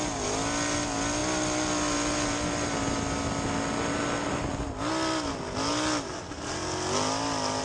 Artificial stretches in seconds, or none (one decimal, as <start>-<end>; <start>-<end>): none